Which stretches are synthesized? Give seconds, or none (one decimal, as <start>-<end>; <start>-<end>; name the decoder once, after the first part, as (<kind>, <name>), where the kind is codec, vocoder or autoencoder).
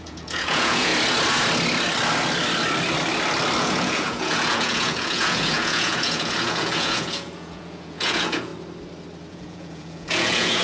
0.0-0.9 (vocoder, Vocos); 3.6-8.5; 9.3-10.6